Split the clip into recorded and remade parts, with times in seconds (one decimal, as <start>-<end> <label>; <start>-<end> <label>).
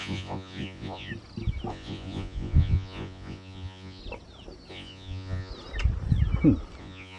0.0-1.1 remade; 1.1-1.7 recorded; 1.7-4.0 remade; 4.0-4.7 recorded; 4.7-5.5 remade; 5.5-6.8 recorded; 6.8-7.2 remade